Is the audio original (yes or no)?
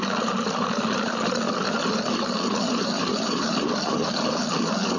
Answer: yes